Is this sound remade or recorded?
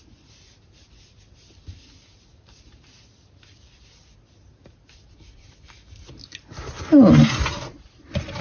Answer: recorded